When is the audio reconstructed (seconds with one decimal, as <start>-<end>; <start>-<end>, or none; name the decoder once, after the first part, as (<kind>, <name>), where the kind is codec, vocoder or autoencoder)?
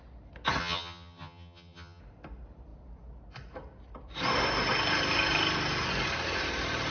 0.6-2.0 (vocoder, HiFi-GAN)